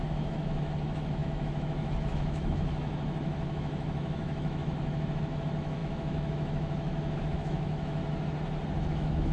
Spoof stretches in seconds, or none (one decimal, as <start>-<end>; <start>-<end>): 0.0-8.0; 8.8-9.3